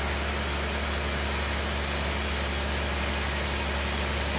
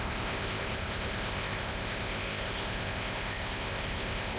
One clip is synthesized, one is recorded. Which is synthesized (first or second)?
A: second